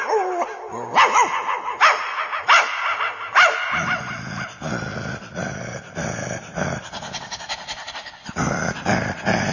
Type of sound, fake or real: real